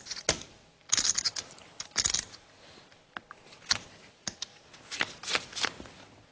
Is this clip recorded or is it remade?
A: recorded